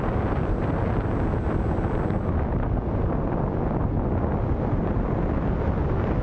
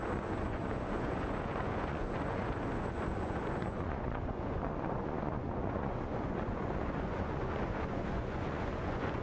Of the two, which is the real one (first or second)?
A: first